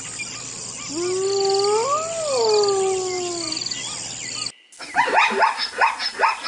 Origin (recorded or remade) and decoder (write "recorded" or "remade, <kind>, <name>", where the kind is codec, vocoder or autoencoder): recorded